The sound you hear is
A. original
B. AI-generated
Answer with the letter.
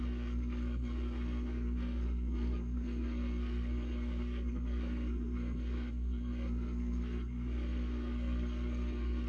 B